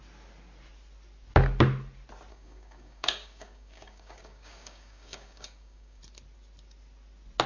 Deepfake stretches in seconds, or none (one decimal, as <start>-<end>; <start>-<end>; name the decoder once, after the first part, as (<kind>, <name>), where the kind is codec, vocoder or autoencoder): 2.3-6.0 (codec, DAC)